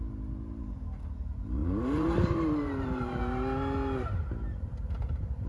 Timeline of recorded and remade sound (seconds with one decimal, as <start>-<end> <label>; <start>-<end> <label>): 0.0-1.6 recorded; 1.6-3.2 remade; 3.2-5.5 recorded